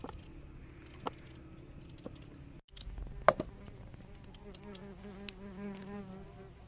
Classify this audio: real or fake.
real